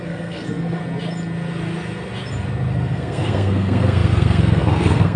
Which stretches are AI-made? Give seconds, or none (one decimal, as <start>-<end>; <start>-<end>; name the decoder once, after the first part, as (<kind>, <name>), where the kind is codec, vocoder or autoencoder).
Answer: 0.0-0.8 (codec, SNAC); 2.7-5.2